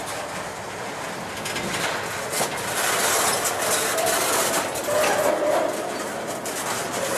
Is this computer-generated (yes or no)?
no